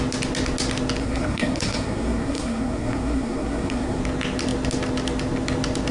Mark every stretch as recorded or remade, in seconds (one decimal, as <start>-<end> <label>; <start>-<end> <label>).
0.0-1.0 recorded; 1.0-4.0 remade; 4.0-5.9 recorded